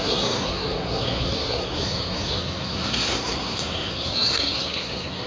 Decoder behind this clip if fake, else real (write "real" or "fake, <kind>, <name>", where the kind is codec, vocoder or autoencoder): fake, codec, SNAC